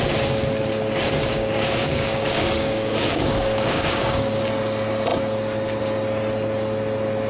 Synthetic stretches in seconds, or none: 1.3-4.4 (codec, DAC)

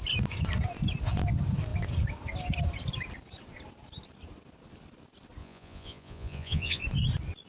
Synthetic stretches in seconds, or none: 5.4-6.8 (vocoder, Vocos)

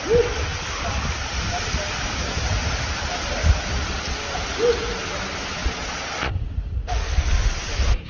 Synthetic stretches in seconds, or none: 5.6-6.3 (vocoder, Vocos)

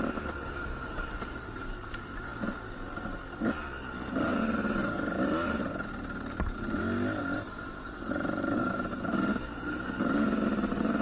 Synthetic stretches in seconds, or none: 0.0-2.3 (vocoder, BigVGAN v2); 7.2-11.0

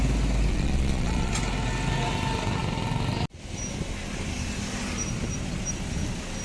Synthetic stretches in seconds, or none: 0.5-1.3 (vocoder, Vocos)

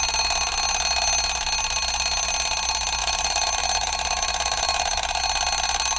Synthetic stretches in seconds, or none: 3.0-5.2 (vocoder, BigVGAN v2)